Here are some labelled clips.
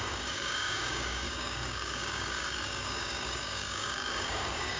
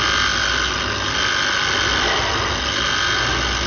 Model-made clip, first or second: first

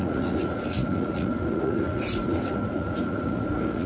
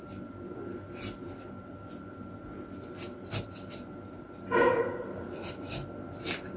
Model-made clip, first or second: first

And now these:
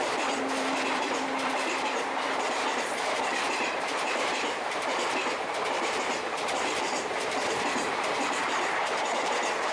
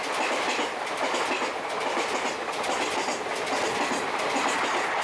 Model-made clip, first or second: first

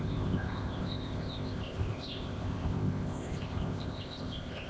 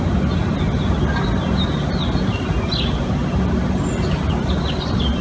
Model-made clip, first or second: first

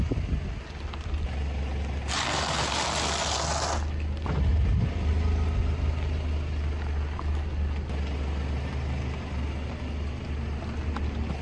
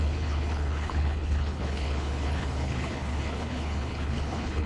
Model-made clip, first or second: second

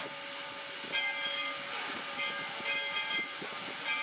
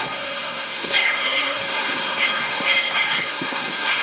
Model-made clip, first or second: second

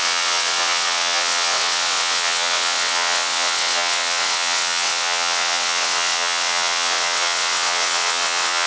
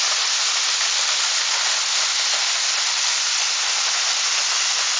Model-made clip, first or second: first